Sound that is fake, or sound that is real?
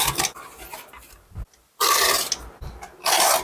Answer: real